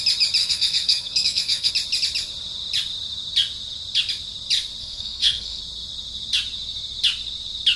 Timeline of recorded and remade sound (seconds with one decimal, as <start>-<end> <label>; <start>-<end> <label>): 0.0-0.4 recorded; 0.4-1.7 remade; 1.7-4.8 recorded; 4.8-5.6 remade; 5.6-7.8 recorded